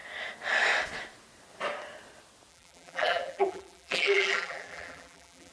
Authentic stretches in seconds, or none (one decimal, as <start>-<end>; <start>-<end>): 0.0-2.5